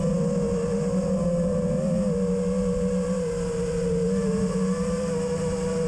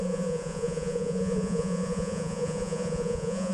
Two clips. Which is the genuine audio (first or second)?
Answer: first